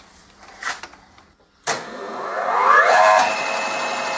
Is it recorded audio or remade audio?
remade